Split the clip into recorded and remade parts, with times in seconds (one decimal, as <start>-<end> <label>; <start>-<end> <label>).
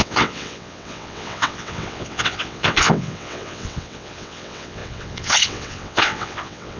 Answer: 0.0-6.8 remade